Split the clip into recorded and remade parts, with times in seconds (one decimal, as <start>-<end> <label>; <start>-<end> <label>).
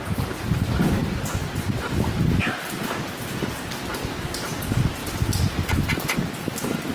0.0-6.9 recorded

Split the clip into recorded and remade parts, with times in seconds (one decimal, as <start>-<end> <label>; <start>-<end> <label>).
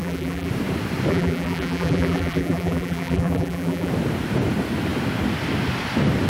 0.0-0.5 remade; 0.5-1.1 recorded; 1.1-3.9 remade; 3.9-6.3 recorded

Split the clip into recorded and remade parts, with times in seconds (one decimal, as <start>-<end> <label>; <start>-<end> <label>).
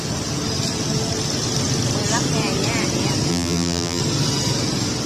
0.0-3.3 recorded; 3.3-4.0 remade; 4.0-5.1 recorded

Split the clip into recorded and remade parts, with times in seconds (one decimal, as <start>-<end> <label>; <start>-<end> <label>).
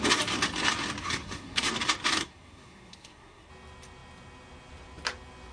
0.0-1.0 recorded; 1.0-1.7 remade; 1.7-2.2 recorded; 2.2-3.5 remade; 3.5-5.5 recorded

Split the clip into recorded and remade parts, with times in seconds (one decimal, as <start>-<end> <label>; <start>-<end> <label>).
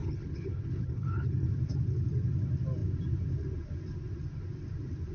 0.0-1.5 remade; 1.5-5.1 recorded